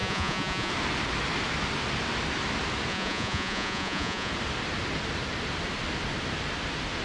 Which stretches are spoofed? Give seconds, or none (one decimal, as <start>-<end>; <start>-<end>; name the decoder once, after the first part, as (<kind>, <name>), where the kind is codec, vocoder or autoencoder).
0.0-0.7 (vocoder, Vocos); 2.9-4.3